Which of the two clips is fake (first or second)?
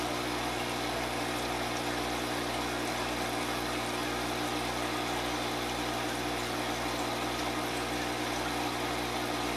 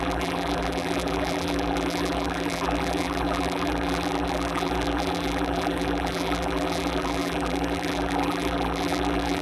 second